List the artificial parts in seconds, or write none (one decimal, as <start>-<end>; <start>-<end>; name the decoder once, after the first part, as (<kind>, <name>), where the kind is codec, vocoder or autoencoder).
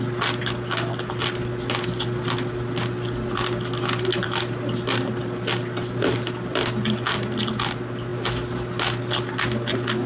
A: none